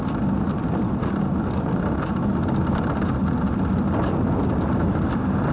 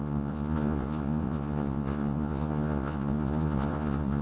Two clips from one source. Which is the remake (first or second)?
second